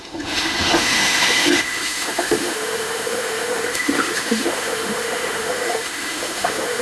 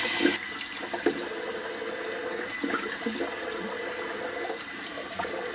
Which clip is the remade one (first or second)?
first